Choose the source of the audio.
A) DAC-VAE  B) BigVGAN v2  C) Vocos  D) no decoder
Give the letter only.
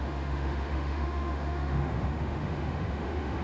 A